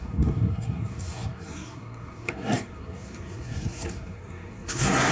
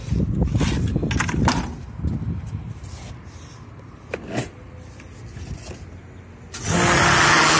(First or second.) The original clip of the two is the second